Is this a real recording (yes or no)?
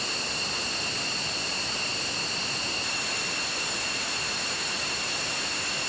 yes